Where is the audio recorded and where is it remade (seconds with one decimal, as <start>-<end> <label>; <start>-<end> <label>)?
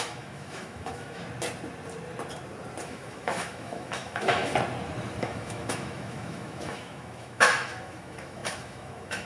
0.0-1.2 remade; 1.2-2.8 recorded; 2.8-4.5 remade; 4.5-5.2 recorded; 5.2-9.3 remade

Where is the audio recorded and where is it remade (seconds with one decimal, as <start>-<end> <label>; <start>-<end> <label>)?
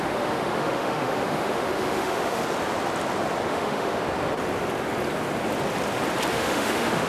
0.0-2.4 remade; 2.4-3.5 recorded; 3.5-4.0 remade; 4.0-6.3 recorded; 6.3-7.1 remade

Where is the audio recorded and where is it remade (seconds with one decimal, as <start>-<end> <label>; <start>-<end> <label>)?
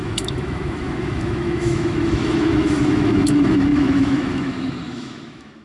0.0-5.6 remade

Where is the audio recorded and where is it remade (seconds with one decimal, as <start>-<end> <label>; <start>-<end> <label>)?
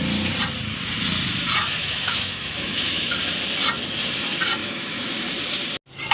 0.0-1.8 recorded; 1.8-3.1 remade; 3.1-4.6 recorded; 4.6-5.1 remade; 5.1-6.1 recorded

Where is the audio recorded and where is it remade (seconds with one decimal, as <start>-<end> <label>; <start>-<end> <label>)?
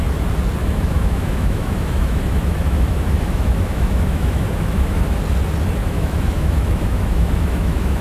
0.0-0.6 recorded; 0.6-5.0 remade; 5.0-5.8 recorded; 5.8-8.0 remade